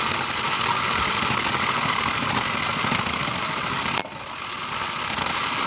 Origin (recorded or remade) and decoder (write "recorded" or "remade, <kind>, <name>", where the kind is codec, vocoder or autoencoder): recorded